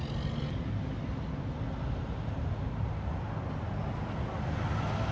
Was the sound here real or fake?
real